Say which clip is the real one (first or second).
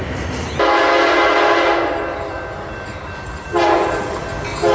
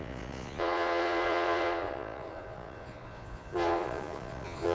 first